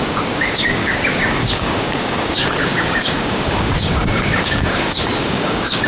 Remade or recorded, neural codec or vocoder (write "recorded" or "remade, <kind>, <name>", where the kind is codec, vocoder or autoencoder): remade, codec, DAC